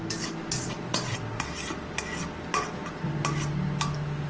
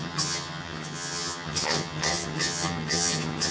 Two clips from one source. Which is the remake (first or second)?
second